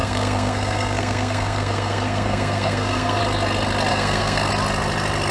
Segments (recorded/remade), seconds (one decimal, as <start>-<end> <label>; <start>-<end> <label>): 0.0-3.2 remade; 3.2-3.9 recorded; 3.9-4.5 remade; 4.5-5.3 recorded